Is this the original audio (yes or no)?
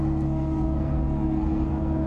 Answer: no